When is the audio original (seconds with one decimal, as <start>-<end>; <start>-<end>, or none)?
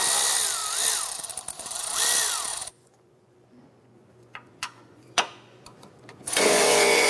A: 0.0-2.5